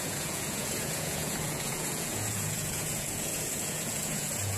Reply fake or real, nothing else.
fake